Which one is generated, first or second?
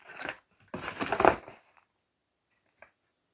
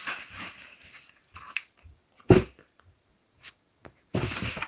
second